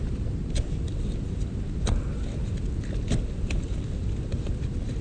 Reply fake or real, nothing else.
real